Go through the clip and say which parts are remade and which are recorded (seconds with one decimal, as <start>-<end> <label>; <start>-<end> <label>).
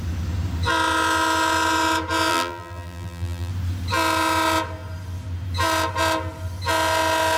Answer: 0.0-2.3 recorded; 2.3-3.5 remade; 3.5-7.4 recorded